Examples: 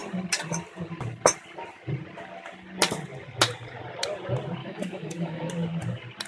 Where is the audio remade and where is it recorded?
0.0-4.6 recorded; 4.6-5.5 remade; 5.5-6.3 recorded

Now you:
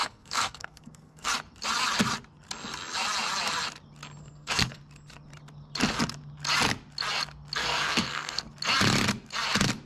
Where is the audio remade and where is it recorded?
0.0-1.3 remade; 1.3-4.2 recorded; 4.2-4.8 remade; 4.8-7.6 recorded; 7.6-8.4 remade; 8.4-9.9 recorded

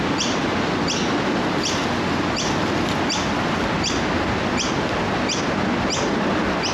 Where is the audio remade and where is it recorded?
0.0-6.7 recorded